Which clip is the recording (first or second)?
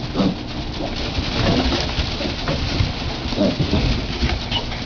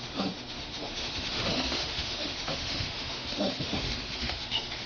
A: first